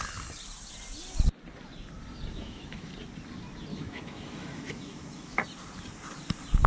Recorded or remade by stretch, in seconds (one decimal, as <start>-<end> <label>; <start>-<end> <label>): 0.0-2.3 recorded; 2.3-2.9 remade; 2.9-3.7 recorded; 3.7-5.4 remade; 5.4-6.7 recorded